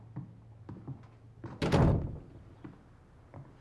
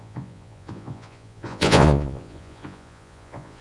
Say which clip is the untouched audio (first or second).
first